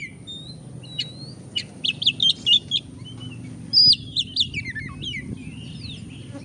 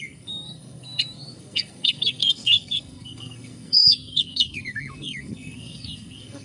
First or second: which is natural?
first